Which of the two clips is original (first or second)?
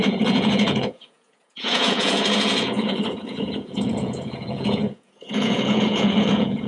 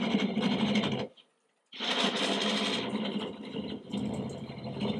second